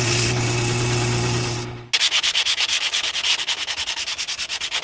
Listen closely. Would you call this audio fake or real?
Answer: real